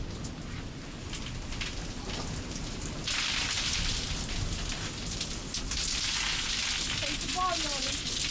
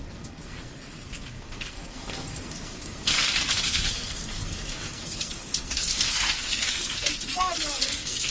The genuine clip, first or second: first